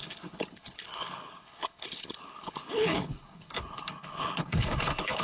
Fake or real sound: fake